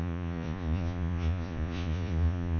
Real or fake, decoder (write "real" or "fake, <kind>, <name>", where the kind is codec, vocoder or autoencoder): fake, vocoder, Vocos